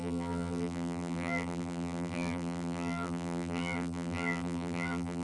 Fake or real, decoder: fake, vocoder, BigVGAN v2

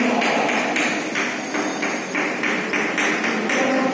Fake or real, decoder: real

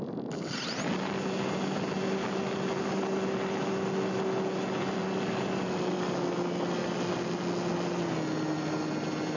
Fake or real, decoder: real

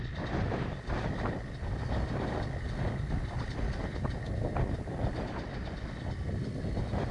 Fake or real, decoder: real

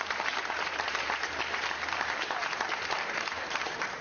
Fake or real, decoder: fake, vocoder, BigVGAN v2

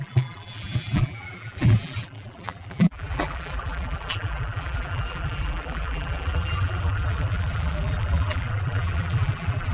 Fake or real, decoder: fake, vocoder, BigVGAN v2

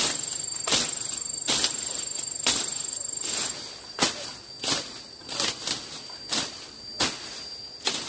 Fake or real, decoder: real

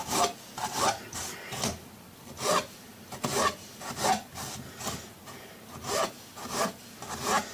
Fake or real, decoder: real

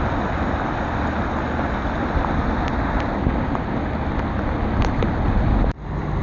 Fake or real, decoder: real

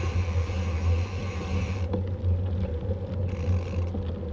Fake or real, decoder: real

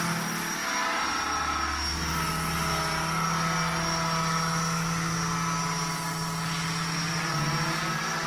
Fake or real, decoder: real